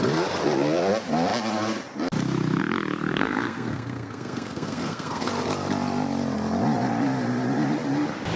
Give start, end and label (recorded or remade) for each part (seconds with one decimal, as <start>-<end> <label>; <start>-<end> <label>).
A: 0.0-3.1 recorded; 3.1-5.3 remade; 5.3-8.4 recorded